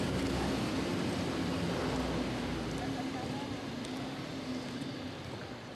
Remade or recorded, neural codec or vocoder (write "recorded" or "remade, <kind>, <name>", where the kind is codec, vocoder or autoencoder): recorded